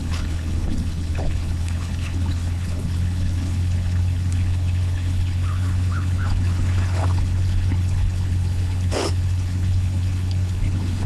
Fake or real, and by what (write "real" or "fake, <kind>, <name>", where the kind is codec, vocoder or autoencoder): fake, codec, HILCodec